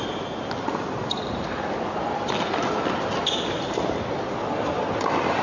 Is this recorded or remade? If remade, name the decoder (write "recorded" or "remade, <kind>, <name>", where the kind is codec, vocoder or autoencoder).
recorded